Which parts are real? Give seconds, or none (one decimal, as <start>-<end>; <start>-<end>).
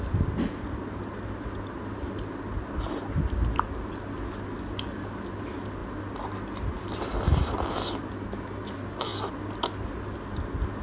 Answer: 0.0-10.8